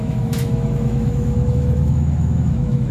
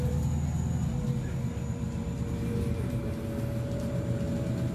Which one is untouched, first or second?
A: second